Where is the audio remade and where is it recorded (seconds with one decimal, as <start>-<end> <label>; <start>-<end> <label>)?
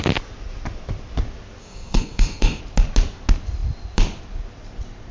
0.0-1.6 recorded; 1.6-2.6 remade; 2.6-5.1 recorded